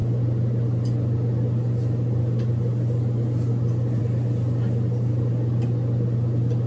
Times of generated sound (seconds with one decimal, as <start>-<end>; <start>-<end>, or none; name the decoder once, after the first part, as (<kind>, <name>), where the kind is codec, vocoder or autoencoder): none